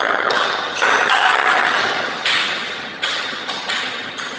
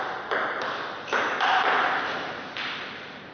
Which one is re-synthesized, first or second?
first